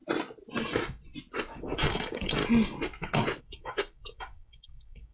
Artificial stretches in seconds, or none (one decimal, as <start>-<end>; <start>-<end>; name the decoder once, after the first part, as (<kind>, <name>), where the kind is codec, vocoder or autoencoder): 1.5-2.4 (codec, DAC); 3.4-5.1